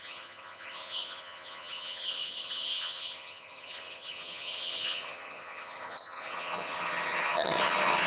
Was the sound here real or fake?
fake